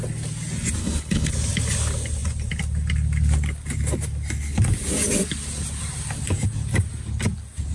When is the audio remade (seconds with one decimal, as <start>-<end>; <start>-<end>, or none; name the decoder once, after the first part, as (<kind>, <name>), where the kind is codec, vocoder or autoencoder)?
0.8-1.3 (codec, HILCodec)